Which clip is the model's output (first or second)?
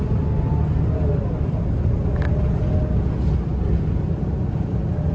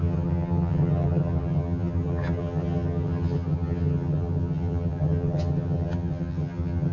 second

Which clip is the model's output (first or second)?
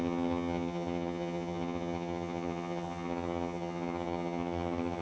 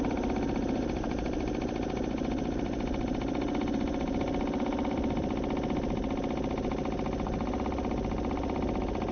first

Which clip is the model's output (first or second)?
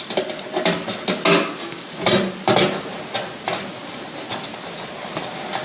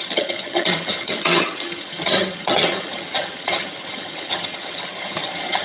second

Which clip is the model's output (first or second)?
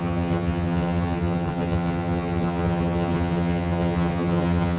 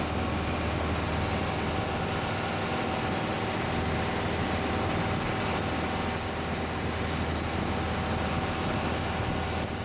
first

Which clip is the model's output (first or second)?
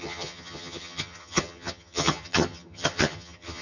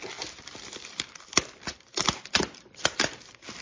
first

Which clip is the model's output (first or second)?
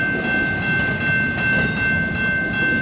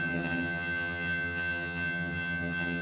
second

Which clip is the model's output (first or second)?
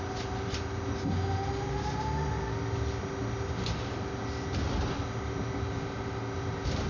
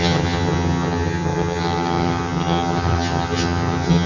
second